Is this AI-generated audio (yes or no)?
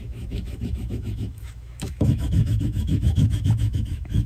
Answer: yes